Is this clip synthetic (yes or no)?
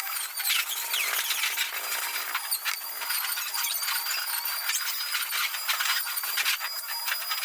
no